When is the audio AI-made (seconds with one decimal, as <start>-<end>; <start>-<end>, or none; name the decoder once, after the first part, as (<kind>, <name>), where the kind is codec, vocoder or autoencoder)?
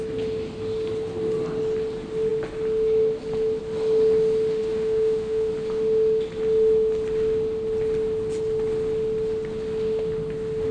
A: 4.6-5.5 (autoencoder, DAC-VAE)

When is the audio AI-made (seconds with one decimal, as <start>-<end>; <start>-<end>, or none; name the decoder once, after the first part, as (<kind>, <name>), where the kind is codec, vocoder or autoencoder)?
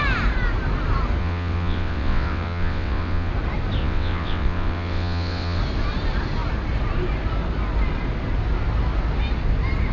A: 1.2-3.3 (vocoder, WaveNeXt); 3.8-5.6